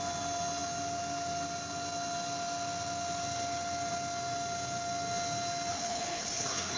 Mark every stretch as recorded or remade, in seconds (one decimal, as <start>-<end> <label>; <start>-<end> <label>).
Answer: 0.0-5.7 recorded; 5.7-6.8 remade